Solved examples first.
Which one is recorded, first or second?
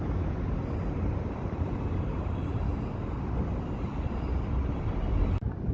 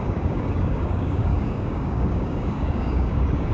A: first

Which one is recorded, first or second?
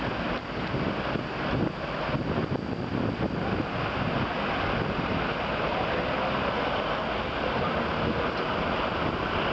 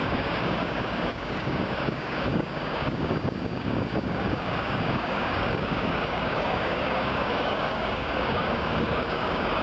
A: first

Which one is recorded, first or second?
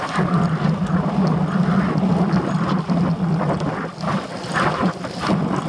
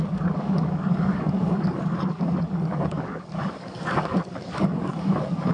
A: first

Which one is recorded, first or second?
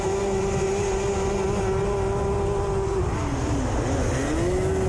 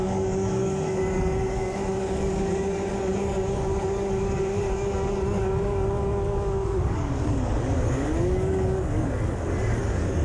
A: first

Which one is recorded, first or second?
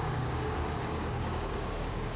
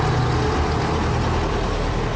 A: second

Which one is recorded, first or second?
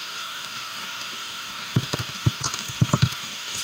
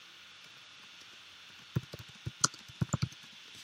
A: second